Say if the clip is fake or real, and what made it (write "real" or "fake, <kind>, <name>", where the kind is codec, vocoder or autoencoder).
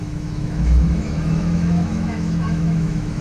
fake, autoencoder, DAC-VAE